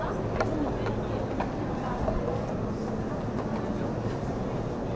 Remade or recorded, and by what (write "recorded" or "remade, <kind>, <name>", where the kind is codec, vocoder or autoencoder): recorded